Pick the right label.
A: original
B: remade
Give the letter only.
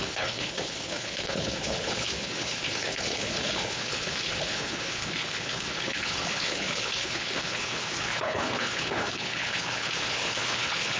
B